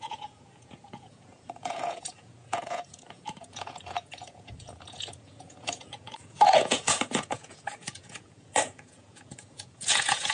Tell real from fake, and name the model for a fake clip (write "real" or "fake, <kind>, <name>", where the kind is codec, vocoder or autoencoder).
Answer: fake, vocoder, Vocos